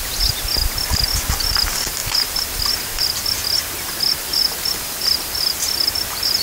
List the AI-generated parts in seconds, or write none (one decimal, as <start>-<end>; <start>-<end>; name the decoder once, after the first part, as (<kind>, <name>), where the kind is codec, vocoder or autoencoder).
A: 2.0-3.2 (vocoder, BigVGAN v2)